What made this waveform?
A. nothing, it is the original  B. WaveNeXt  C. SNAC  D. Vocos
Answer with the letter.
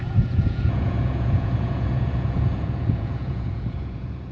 D